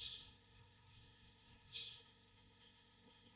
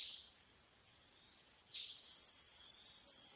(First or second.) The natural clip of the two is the second